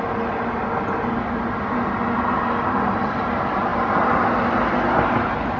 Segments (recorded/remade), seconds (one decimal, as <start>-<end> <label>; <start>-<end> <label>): 0.0-5.6 recorded